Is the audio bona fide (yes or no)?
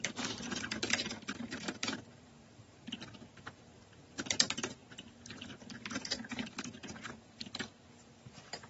no